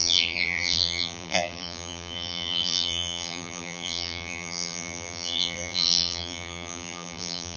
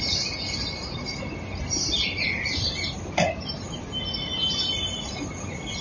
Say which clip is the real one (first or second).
second